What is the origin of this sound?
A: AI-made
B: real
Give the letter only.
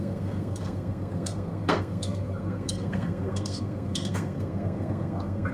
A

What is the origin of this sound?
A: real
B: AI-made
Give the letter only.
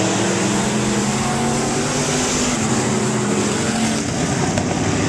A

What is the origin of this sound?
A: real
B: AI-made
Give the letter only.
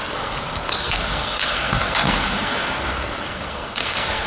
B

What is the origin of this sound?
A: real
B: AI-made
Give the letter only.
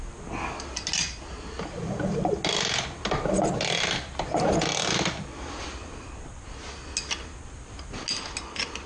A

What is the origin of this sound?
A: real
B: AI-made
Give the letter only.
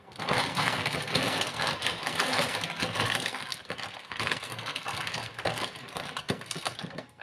B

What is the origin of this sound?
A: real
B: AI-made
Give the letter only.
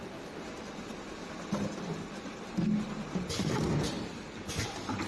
A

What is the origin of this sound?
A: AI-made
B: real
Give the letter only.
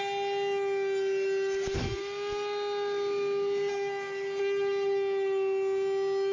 B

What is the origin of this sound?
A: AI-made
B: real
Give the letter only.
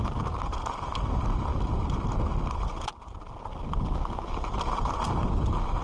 B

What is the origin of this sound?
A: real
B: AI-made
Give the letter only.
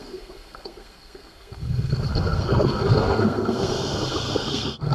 B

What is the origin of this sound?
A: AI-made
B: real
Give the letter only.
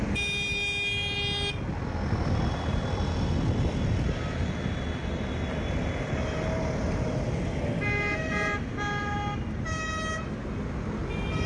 B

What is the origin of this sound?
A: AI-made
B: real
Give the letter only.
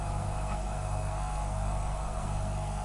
A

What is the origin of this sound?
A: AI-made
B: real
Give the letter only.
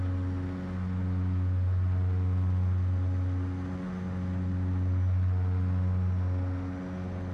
B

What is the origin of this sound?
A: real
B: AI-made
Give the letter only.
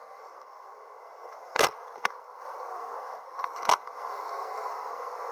B